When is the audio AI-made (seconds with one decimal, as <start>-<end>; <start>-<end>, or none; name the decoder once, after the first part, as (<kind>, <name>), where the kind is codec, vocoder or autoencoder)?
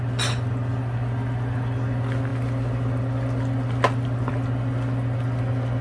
none